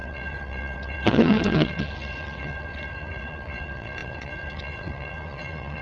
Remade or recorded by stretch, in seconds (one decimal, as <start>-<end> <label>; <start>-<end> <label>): 0.0-5.8 remade